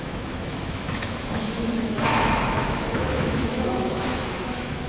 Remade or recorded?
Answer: remade